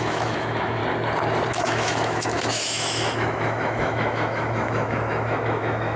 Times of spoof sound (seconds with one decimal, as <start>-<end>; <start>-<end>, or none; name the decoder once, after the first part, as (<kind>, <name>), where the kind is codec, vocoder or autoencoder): 0.0-0.8 (autoencoder, DAC-VAE); 1.5-6.0